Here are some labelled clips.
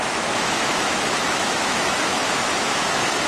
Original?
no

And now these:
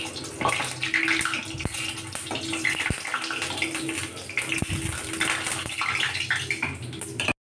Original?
yes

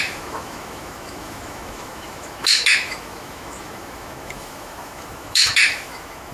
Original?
no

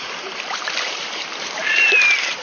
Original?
yes